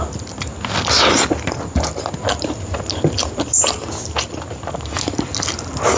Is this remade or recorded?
recorded